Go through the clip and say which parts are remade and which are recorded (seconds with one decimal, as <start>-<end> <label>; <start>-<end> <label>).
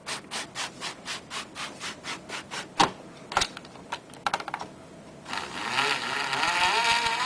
0.0-7.3 recorded